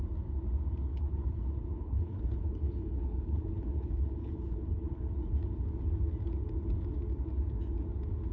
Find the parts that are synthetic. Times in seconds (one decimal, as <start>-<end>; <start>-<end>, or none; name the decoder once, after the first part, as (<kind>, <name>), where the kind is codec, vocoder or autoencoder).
0.9-5.0 (codec, HILCodec)